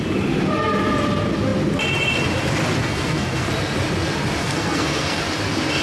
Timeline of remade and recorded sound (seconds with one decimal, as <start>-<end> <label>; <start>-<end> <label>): 0.0-2.8 recorded; 2.8-3.5 remade; 3.5-4.4 recorded; 4.4-5.2 remade; 5.2-5.8 recorded